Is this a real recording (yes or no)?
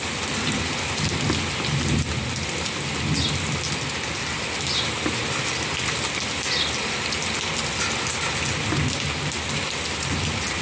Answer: yes